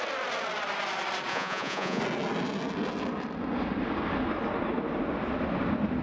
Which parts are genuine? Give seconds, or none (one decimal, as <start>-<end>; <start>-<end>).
0.0-1.3; 2.0-6.0

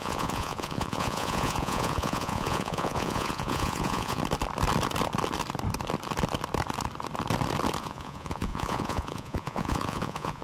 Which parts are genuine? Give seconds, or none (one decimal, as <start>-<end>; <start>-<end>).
4.2-7.8

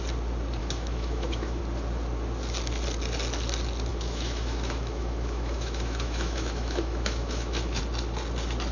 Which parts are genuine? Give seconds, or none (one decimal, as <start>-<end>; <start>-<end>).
0.0-0.6; 1.6-3.9; 7.8-8.7

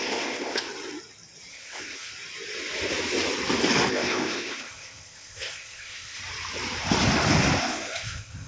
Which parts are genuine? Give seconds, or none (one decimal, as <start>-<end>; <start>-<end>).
0.7-1.5; 2.1-3.9; 6.2-7.6